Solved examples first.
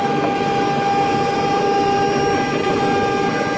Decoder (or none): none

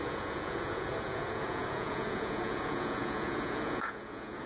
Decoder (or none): vocoder, Vocos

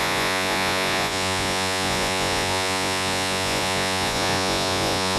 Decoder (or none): vocoder, Vocos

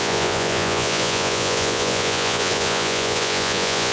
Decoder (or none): vocoder, Vocos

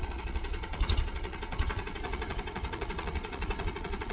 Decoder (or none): vocoder, Vocos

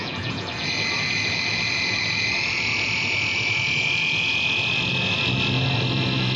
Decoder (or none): vocoder, Vocos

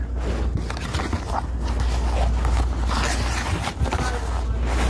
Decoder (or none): none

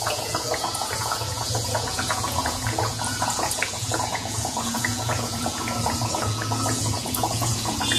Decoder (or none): vocoder, Vocos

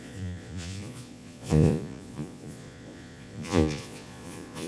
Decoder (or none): vocoder, Vocos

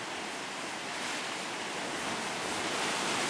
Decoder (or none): none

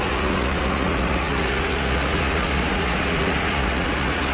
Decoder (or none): vocoder, Vocos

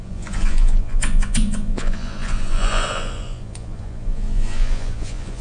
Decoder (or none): vocoder, Vocos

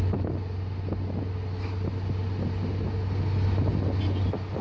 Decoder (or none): none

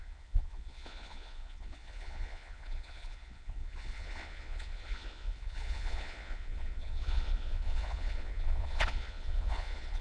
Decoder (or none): vocoder, Vocos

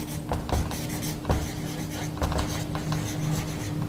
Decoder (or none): none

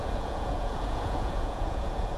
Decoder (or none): vocoder, Vocos